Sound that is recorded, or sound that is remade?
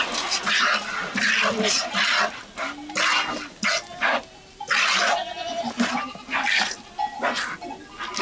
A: recorded